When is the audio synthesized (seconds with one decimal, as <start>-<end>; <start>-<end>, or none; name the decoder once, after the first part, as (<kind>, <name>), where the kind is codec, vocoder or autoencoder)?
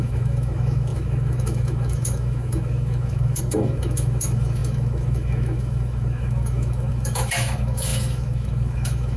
0.0-9.2 (autoencoder, DAC-VAE)